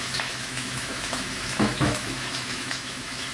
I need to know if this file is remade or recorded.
remade